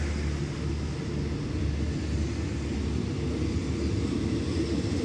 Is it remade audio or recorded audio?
recorded